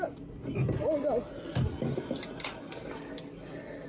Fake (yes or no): no